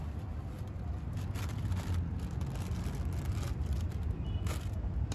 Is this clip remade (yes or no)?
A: no